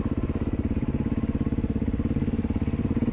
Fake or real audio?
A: real